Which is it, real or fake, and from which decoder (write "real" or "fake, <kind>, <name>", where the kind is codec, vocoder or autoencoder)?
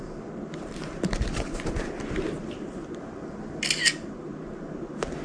real